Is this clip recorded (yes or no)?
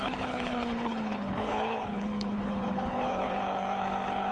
no